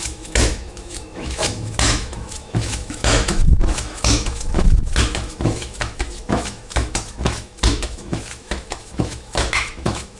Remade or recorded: remade